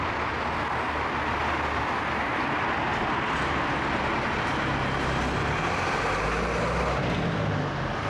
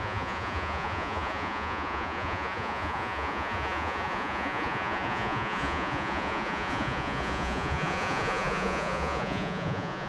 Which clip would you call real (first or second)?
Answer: first